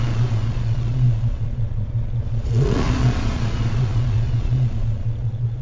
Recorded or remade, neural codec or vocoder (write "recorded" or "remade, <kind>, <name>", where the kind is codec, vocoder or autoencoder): remade, vocoder, Vocos